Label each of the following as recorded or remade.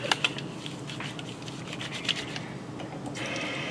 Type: recorded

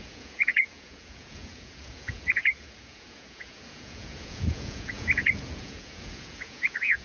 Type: remade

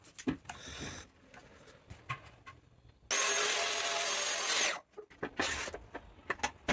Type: recorded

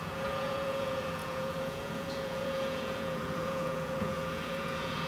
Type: remade